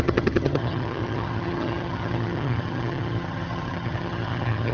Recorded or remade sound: remade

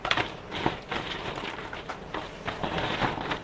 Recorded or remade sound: remade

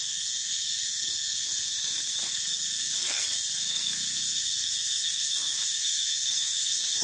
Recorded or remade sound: remade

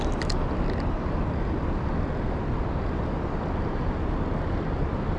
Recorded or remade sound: recorded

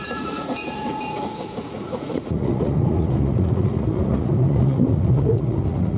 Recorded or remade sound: remade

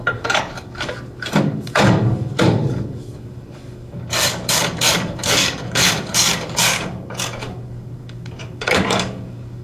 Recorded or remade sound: remade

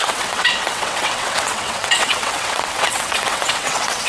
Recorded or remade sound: remade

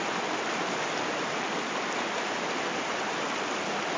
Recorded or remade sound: recorded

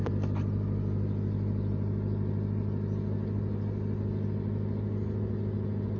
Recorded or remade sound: recorded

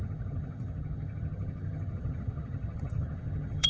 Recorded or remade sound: remade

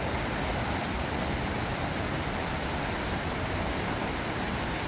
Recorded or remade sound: recorded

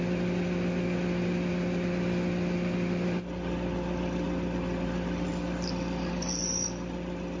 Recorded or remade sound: recorded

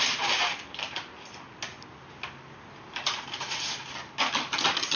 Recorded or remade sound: recorded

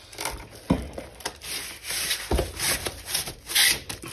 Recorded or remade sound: recorded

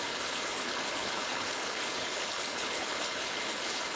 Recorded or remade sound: remade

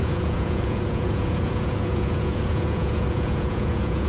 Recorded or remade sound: remade